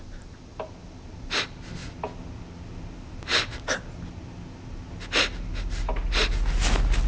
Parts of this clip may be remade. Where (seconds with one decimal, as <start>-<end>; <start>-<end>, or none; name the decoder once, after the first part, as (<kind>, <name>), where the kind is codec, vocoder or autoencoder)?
none